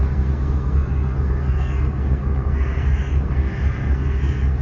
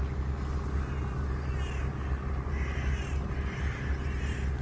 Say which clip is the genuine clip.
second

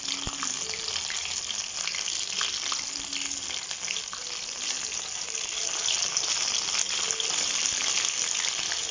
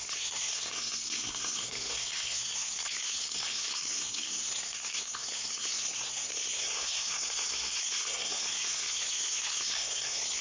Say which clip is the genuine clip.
first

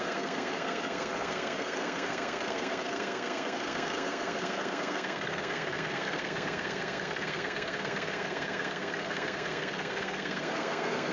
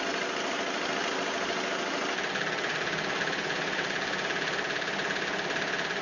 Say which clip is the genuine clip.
second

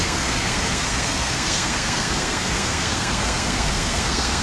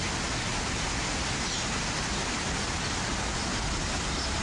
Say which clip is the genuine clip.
second